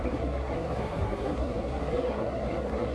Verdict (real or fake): fake